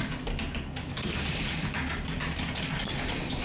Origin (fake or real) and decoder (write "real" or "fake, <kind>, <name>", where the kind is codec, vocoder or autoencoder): real